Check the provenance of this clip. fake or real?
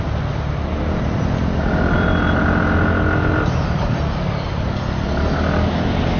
real